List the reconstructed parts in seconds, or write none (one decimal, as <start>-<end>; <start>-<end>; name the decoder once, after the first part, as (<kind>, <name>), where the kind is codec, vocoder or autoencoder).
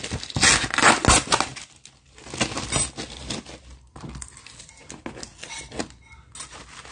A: none